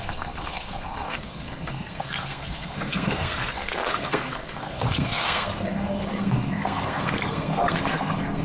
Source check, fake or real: fake